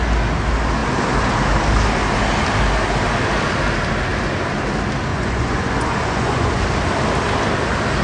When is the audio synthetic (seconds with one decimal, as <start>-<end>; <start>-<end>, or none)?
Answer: 5.1-6.6